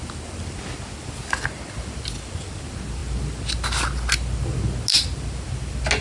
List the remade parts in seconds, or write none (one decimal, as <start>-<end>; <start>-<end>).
none